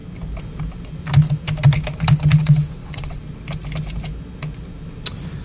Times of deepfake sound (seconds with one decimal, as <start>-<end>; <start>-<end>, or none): 2.4-3.2